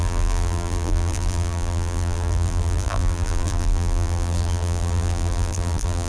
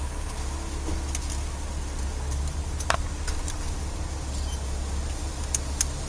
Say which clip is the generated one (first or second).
first